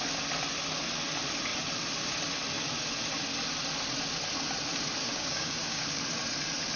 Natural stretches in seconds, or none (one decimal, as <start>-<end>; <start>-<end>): 0.0-5.0; 6.0-6.8